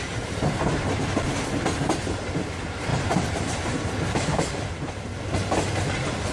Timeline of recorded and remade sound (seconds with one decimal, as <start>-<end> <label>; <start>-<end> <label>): 0.0-2.9 recorded; 2.9-4.9 remade; 4.9-6.3 recorded